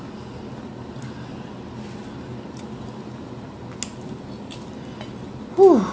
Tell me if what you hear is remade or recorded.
recorded